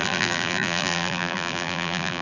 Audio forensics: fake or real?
fake